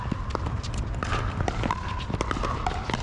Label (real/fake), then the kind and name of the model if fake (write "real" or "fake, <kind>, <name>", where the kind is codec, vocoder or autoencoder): real